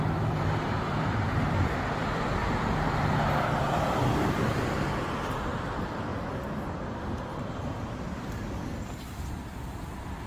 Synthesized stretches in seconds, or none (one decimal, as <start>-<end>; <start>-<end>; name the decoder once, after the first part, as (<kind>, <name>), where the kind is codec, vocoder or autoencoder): 0.0-6.1 (vocoder, BigVGAN v2); 7.5-10.3